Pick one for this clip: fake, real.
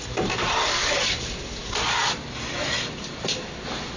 real